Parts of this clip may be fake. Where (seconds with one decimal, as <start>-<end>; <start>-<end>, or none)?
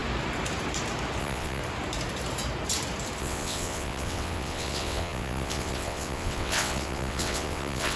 1.2-1.6; 3.2-8.0